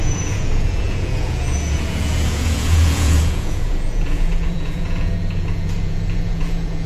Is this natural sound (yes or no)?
no